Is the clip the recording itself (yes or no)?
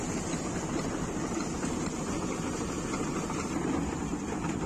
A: yes